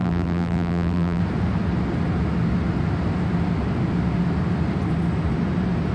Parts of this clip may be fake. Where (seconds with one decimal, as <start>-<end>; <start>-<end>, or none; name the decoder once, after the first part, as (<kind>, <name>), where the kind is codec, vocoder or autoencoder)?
0.0-1.2 (vocoder, BigVGAN v2)